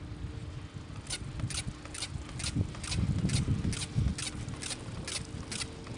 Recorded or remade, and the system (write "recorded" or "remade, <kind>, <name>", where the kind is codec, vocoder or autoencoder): recorded